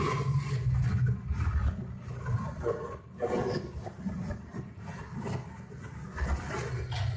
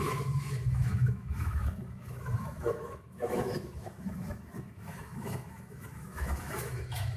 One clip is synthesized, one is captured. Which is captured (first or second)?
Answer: first